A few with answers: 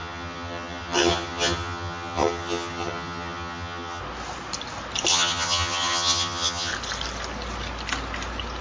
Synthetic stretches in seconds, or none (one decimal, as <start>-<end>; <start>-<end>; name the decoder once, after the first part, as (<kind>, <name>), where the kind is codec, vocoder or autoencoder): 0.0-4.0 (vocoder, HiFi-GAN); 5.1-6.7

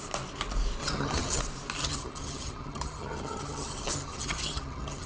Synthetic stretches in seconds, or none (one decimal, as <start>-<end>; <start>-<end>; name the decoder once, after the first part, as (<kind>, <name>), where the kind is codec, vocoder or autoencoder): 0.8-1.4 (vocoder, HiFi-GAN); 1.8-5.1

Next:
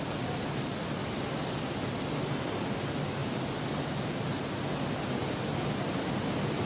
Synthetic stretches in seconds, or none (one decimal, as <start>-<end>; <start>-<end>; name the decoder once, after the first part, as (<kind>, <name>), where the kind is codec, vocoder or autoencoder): none

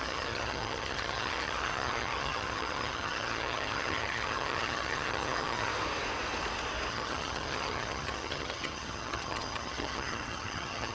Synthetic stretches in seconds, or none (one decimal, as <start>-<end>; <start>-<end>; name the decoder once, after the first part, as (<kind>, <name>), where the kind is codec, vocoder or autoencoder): 0.0-5.7 (vocoder, HiFi-GAN); 6.9-10.9

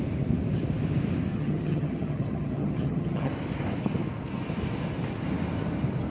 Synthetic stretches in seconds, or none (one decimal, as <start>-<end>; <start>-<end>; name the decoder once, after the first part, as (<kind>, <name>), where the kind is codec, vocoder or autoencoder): 1.3-3.3 (vocoder, HiFi-GAN)

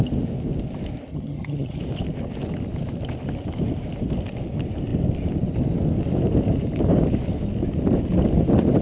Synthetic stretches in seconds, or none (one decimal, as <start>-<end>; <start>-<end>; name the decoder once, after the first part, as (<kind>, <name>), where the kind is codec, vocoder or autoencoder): 1.1-1.8 (vocoder, HiFi-GAN)